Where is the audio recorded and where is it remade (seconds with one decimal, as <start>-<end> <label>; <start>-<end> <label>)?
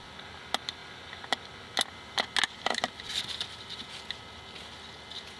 0.0-5.4 recorded